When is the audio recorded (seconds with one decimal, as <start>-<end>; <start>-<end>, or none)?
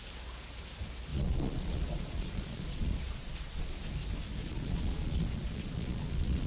0.0-1.1; 3.6-4.4